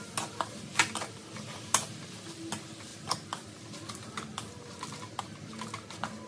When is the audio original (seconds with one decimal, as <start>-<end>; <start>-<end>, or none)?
0.0-6.3